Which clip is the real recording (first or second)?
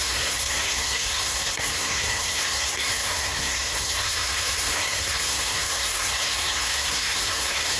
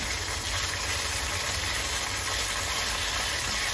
second